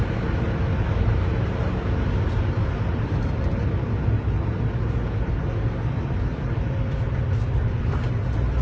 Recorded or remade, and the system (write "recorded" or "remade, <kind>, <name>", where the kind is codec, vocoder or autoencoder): recorded